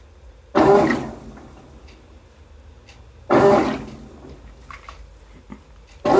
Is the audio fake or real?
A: real